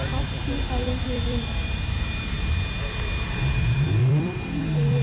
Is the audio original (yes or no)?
no